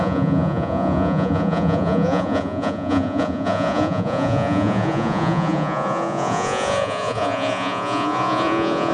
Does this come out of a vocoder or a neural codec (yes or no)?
yes